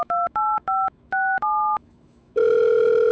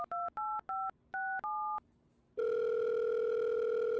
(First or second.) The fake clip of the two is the first